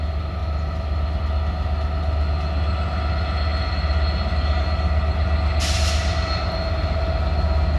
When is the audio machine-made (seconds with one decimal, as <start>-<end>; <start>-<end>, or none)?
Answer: none

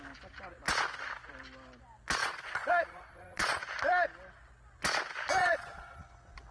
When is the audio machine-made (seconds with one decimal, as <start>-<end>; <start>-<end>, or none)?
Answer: 2.2-3.6; 5.4-6.0

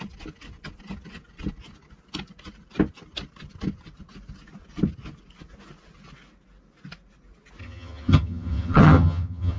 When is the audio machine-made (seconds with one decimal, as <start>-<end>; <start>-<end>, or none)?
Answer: 7.6-9.6

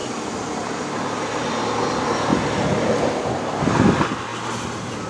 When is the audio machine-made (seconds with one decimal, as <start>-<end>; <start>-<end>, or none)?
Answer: 0.0-0.6